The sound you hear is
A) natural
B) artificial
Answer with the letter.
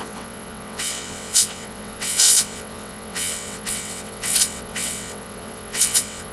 B